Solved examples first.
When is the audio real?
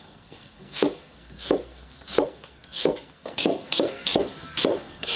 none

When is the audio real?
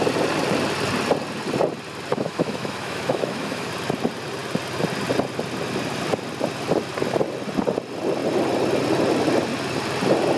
0.0-2.1; 3.7-10.4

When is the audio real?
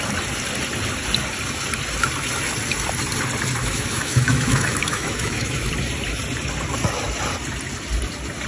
0.0-3.6; 5.7-8.5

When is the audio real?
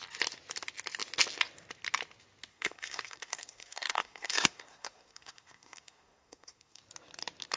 0.0-2.5; 6.8-7.6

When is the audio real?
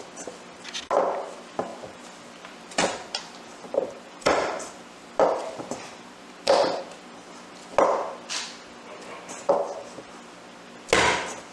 0.0-1.7; 6.8-11.5